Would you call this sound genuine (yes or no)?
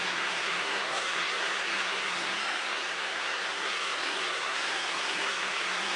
no